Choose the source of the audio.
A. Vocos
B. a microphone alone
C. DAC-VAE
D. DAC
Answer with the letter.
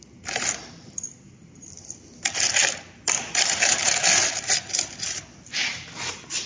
B